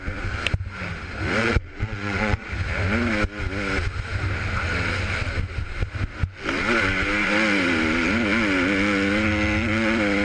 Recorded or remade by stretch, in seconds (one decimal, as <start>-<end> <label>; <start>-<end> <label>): 0.0-1.4 recorded; 1.4-2.5 remade; 2.5-10.2 recorded